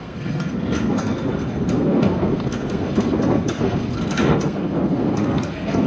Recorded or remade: remade